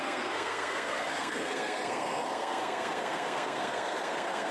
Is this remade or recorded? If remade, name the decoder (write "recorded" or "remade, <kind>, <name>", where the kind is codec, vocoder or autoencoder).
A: remade, codec, SNAC